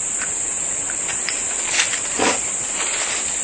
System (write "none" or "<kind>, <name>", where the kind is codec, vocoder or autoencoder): none